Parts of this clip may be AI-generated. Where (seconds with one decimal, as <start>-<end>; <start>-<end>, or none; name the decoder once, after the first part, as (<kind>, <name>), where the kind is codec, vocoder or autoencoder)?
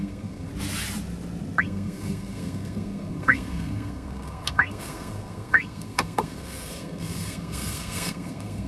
0.0-0.5 (codec, SNAC); 1.6-8.7